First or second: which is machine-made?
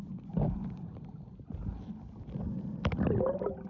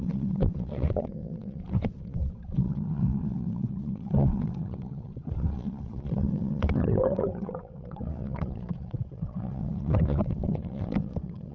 second